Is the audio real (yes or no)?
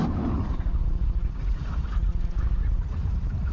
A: yes